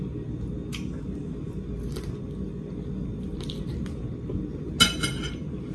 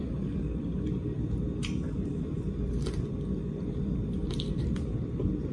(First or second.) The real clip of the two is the first